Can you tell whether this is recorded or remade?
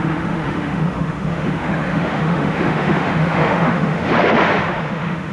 remade